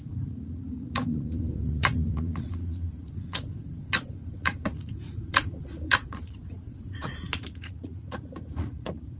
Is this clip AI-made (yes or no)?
yes